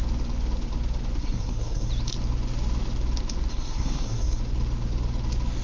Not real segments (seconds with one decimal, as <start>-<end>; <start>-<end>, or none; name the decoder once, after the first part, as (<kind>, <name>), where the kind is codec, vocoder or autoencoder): 1.2-1.9 (codec, SNAC); 3.5-4.4